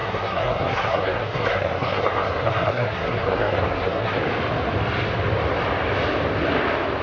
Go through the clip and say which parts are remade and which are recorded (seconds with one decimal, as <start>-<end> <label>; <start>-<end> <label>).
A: 0.0-4.2 remade; 4.2-7.0 recorded